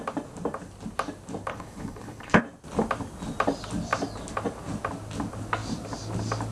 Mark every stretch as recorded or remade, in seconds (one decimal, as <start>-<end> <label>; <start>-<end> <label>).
0.0-1.5 recorded; 1.5-2.4 remade; 2.4-6.5 recorded